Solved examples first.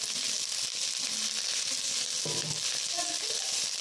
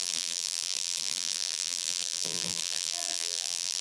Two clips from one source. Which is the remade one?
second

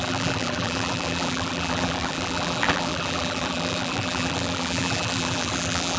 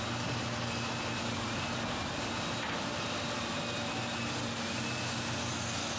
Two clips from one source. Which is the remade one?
first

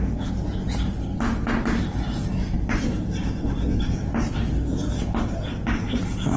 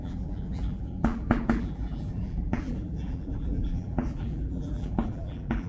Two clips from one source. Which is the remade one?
second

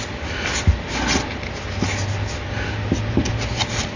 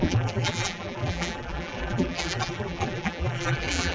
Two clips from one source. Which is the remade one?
second